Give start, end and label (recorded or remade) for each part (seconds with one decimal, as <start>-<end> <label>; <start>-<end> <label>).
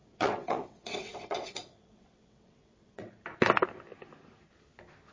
0.0-3.1 remade; 3.1-5.1 recorded